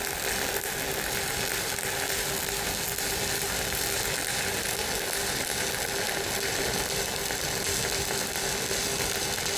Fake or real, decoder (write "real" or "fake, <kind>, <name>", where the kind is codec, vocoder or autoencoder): real